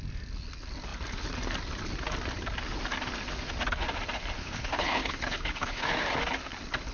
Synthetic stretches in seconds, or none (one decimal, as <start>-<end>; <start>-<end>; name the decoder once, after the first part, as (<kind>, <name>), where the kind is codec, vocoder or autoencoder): 4.4-5.9 (codec, HILCodec)